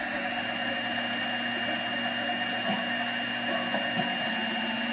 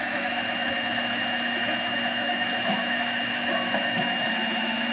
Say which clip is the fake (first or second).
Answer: second